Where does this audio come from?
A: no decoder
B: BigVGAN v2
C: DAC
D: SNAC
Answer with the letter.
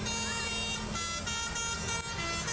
A